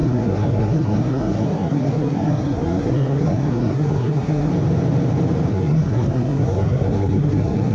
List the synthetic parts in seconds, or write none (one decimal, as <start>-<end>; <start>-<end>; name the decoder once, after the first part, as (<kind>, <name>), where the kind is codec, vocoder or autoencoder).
0.0-4.5 (codec, SNAC); 5.5-7.7